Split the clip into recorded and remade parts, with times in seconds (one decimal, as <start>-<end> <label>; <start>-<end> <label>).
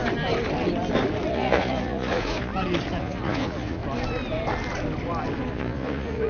0.0-1.3 recorded; 1.3-2.5 remade; 2.5-3.0 recorded; 3.0-3.8 remade; 3.8-5.5 recorded; 5.5-6.3 remade